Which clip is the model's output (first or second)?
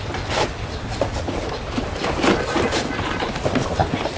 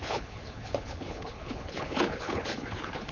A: second